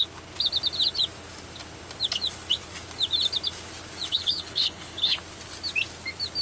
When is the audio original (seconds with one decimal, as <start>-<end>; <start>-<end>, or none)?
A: 0.0-4.1; 5.2-6.4

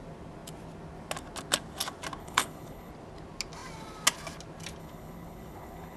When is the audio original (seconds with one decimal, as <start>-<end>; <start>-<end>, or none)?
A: 0.0-2.2; 2.9-4.8